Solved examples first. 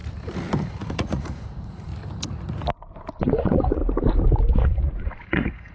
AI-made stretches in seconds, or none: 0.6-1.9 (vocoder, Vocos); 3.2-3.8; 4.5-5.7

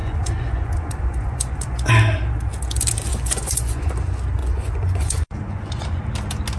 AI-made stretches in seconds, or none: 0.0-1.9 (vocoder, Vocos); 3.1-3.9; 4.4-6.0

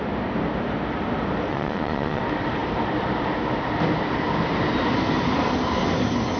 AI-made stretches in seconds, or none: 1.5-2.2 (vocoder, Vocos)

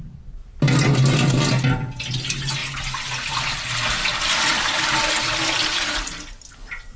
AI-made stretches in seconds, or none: none